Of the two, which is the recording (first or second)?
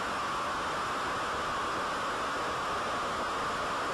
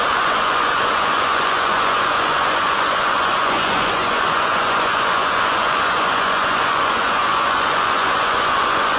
first